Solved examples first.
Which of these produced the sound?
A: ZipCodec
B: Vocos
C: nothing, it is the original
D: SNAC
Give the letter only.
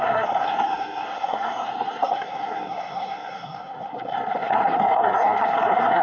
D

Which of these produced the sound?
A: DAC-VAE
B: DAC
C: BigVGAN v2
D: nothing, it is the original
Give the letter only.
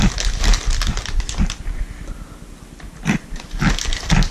D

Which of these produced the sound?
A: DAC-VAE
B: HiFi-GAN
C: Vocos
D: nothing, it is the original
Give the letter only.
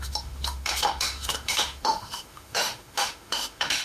A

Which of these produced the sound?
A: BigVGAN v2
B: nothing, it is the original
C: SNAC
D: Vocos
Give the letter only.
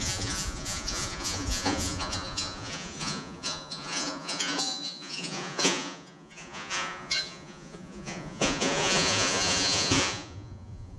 D